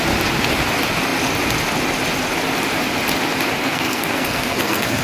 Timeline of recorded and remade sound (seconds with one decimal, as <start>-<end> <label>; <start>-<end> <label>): 0.0-3.6 recorded; 3.6-5.0 remade

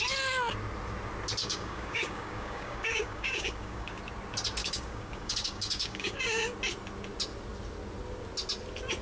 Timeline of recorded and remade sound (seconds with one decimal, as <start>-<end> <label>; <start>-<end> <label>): 0.0-1.4 recorded; 1.4-4.0 remade; 4.0-4.6 recorded; 4.6-6.2 remade; 6.2-9.0 recorded

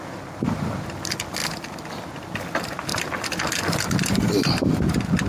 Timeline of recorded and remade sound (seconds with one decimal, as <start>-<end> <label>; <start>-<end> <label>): 0.0-5.3 recorded

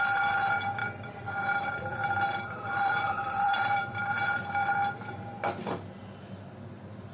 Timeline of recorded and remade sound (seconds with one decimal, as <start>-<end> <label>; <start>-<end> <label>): 0.0-0.8 recorded; 0.8-4.1 remade; 4.1-7.1 recorded

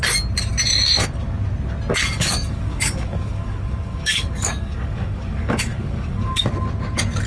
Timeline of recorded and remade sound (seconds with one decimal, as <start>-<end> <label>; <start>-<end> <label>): 0.0-2.0 recorded; 2.0-6.4 remade; 6.4-7.3 recorded

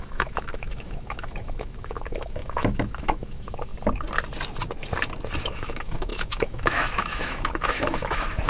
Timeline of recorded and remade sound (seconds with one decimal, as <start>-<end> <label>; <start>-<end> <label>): 0.0-3.7 remade; 3.7-5.4 recorded; 5.4-8.5 remade

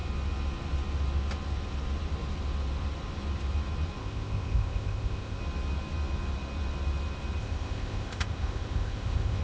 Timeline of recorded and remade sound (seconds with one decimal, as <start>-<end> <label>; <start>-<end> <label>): 0.0-4.0 recorded; 4.0-5.4 remade; 5.4-7.4 recorded; 7.4-9.4 remade